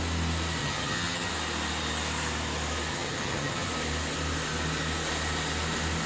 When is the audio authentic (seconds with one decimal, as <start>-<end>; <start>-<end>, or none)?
0.0-0.6; 1.3-2.9; 3.7-6.1